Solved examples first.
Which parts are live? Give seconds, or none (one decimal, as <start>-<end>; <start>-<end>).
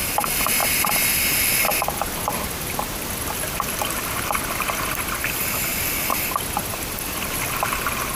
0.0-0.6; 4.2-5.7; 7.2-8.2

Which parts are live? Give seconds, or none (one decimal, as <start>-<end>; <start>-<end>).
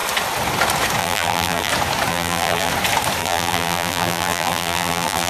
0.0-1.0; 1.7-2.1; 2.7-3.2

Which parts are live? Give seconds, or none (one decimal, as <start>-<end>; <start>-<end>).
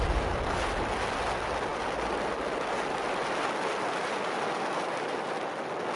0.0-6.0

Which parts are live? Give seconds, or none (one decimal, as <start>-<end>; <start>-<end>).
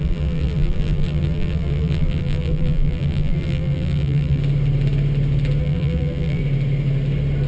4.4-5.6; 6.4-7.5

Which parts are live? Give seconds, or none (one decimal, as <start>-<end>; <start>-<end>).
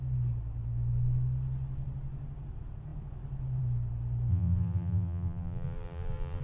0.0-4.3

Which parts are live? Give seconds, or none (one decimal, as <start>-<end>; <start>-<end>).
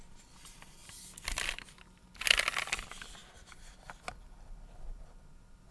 0.0-5.7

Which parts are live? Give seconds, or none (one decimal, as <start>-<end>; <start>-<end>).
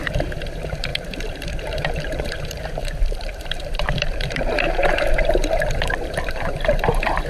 none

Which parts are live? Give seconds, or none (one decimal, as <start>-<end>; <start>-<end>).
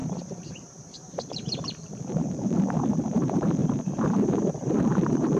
3.6-4.8